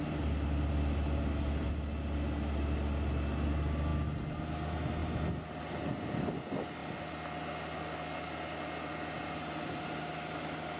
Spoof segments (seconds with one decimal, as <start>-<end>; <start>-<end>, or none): none